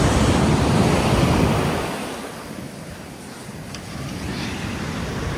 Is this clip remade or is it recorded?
recorded